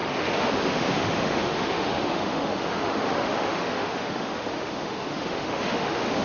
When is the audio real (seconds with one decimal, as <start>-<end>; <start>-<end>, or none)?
none